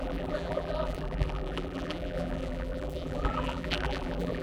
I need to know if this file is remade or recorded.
remade